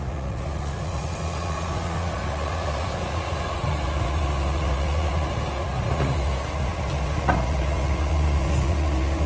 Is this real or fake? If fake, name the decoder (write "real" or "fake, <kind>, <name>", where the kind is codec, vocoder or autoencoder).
fake, vocoder, Vocos